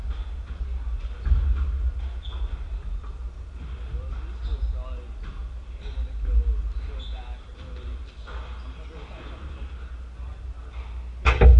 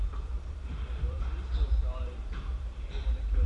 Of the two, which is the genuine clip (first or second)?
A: first